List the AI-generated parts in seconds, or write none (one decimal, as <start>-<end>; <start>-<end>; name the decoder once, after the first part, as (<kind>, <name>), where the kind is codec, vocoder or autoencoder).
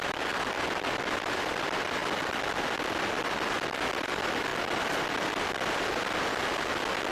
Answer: 0.0-2.0 (vocoder, BigVGAN v2); 3.9-4.5